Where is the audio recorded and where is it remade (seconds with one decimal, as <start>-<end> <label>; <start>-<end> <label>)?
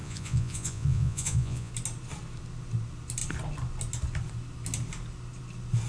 0.0-1.7 remade; 1.7-5.9 recorded